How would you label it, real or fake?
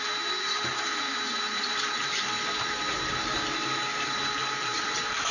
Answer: fake